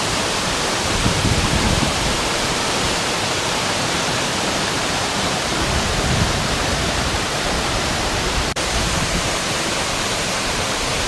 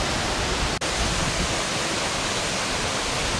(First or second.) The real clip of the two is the second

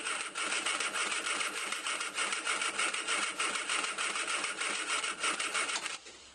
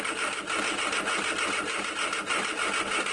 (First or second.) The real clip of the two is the second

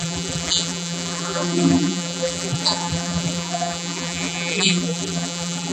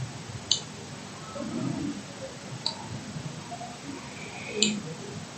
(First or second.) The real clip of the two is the second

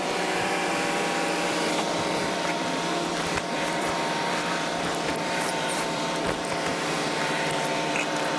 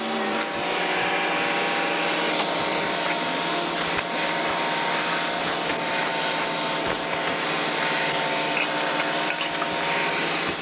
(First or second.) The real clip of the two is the second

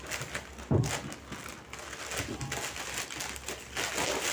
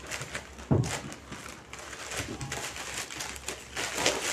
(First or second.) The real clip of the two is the first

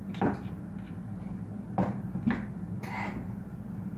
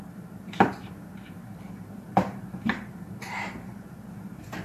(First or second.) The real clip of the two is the first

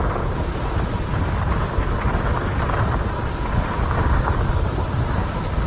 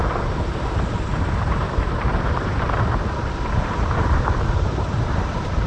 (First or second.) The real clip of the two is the first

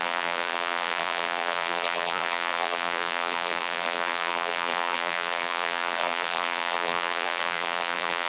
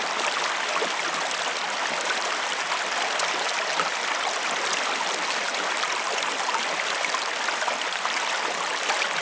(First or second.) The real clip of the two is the second